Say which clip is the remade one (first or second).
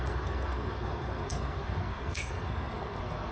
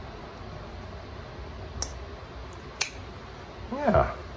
first